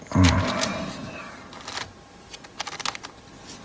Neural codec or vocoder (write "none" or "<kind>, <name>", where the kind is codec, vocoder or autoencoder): none